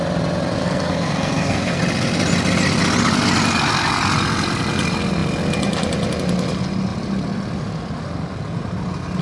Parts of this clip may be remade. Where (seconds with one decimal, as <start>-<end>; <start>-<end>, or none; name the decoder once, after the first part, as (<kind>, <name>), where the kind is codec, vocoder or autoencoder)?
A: 0.6-1.8 (codec, SNAC)